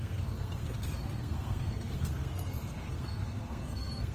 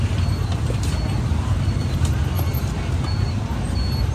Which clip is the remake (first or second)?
first